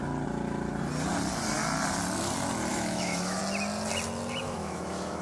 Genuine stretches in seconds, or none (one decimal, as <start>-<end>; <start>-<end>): 0.0-2.7; 3.4-4.4